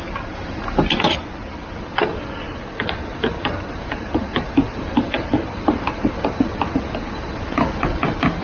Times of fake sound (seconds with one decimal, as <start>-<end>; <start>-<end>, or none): 3.1-5.0